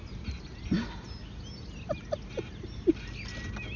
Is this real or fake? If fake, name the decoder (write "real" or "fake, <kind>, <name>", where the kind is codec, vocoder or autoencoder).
real